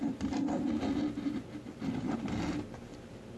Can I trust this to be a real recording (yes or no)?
yes